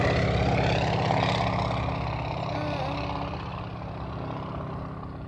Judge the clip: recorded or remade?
recorded